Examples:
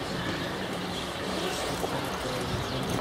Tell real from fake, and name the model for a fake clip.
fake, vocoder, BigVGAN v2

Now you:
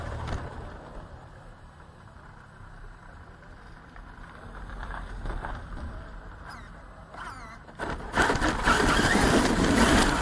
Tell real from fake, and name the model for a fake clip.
fake, vocoder, BigVGAN v2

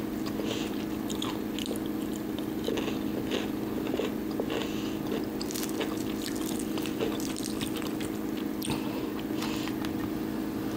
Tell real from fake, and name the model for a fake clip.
real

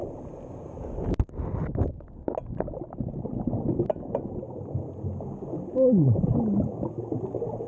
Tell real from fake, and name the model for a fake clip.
real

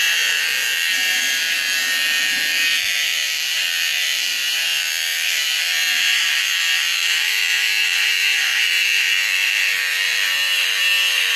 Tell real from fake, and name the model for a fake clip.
fake, vocoder, BigVGAN v2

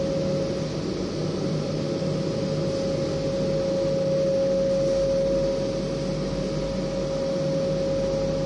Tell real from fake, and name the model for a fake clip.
real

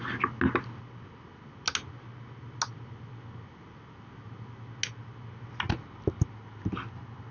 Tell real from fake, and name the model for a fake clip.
real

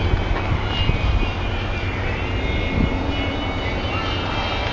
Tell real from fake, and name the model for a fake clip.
fake, vocoder, BigVGAN v2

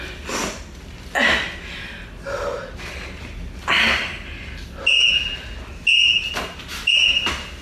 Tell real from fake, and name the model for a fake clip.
real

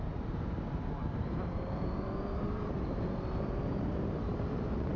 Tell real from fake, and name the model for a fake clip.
fake, vocoder, BigVGAN v2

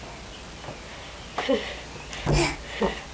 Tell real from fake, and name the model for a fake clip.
real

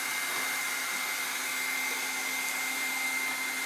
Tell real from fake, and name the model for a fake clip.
real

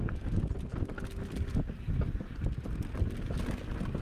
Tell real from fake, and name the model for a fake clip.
real